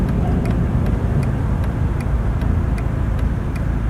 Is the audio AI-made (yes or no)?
no